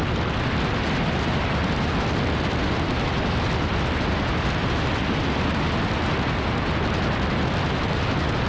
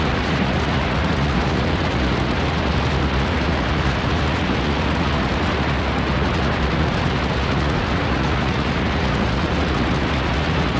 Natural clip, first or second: first